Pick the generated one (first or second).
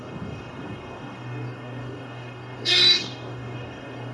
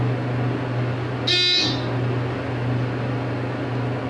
first